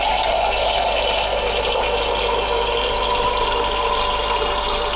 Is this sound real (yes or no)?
yes